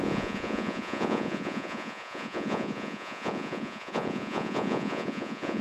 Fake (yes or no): yes